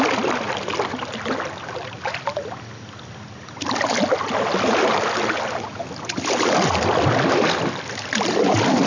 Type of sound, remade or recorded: recorded